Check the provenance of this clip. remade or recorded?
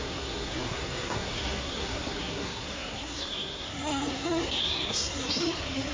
remade